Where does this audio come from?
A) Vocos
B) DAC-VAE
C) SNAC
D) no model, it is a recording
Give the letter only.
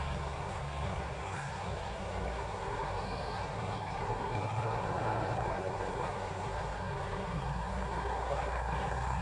C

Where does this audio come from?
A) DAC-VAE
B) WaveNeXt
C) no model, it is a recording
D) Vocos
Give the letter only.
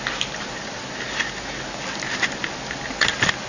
C